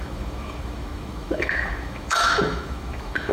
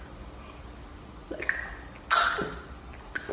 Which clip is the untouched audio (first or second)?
second